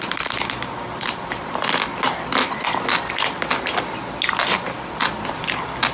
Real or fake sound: real